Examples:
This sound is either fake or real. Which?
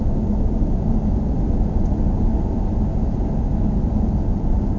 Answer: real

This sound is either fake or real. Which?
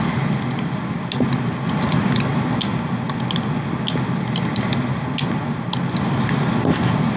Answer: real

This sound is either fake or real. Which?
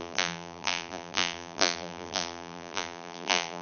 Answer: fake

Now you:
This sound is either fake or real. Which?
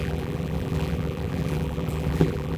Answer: fake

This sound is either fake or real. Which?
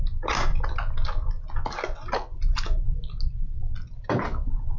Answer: real